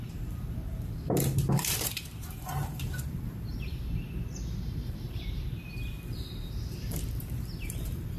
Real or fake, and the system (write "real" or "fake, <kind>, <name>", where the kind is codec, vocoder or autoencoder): fake, vocoder, BigVGAN v2